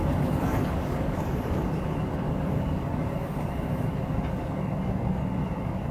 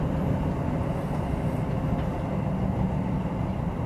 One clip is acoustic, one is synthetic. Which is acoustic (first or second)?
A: second